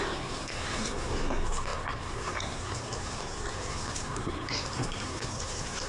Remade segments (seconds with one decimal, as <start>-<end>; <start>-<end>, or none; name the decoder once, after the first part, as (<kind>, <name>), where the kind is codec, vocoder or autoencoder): 0.0-5.9 (codec, SNAC)